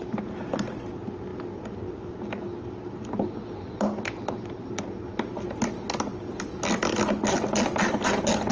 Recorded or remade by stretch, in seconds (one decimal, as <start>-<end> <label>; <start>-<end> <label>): 0.0-8.5 recorded